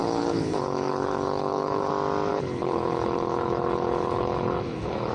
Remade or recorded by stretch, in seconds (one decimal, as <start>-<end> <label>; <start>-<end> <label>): 0.0-1.9 remade; 1.9-2.3 recorded; 2.3-5.1 remade